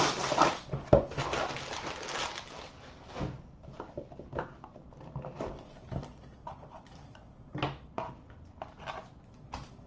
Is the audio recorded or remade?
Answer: recorded